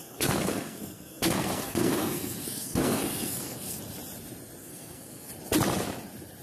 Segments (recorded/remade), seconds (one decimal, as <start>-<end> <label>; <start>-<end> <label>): 0.0-3.8 remade; 3.8-4.6 recorded; 4.6-5.3 remade; 5.3-6.4 recorded